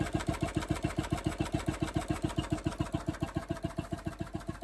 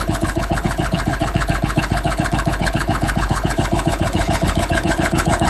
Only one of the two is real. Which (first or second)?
first